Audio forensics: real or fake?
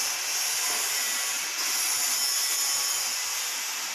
real